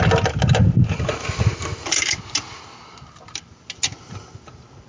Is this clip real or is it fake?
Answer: real